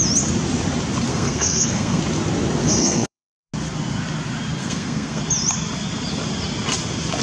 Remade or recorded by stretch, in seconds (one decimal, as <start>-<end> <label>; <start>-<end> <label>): 0.0-1.1 recorded; 1.1-2.0 remade; 2.0-2.6 recorded; 2.6-3.5 remade; 3.5-4.6 recorded; 4.6-5.2 remade; 5.2-7.2 recorded